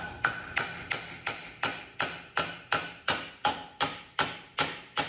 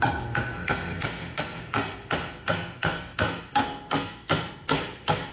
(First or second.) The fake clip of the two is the second